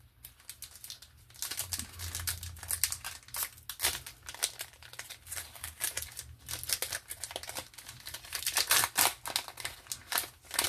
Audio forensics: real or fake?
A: real